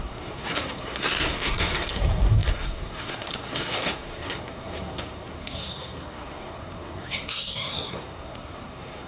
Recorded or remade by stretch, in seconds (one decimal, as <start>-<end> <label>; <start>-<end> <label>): 0.0-9.1 remade